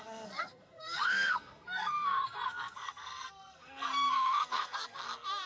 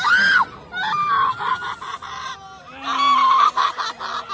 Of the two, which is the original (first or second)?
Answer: second